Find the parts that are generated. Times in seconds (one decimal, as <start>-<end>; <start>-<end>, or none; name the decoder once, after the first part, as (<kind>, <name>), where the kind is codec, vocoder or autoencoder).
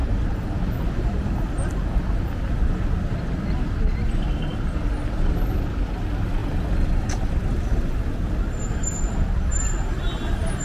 0.0-1.8 (vocoder, BigVGAN v2)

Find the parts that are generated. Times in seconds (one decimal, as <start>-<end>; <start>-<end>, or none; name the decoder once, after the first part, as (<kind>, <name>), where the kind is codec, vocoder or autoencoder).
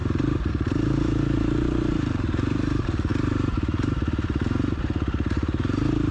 0.0-6.1 (vocoder, BigVGAN v2)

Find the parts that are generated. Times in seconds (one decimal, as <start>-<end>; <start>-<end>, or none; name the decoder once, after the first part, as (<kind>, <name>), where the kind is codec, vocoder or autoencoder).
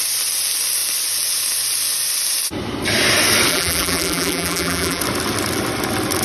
3.5-5.0 (vocoder, BigVGAN v2)